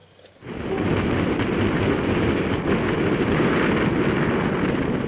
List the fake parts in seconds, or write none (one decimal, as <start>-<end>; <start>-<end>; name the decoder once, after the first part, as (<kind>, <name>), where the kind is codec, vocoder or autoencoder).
none